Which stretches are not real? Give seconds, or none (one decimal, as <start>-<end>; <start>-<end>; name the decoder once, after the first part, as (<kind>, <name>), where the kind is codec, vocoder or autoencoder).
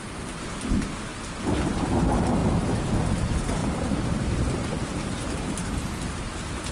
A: 0.0-1.1 (vocoder, BigVGAN v2); 1.8-2.4; 3.0-6.7